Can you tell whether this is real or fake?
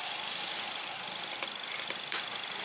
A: real